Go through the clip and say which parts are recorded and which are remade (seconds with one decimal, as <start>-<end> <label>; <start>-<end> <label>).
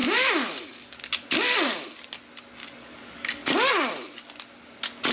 0.0-2.6 recorded; 2.6-3.9 remade; 3.9-5.1 recorded